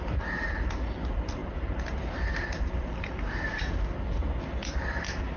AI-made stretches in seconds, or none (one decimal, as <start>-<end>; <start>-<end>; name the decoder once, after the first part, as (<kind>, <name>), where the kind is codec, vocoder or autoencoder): none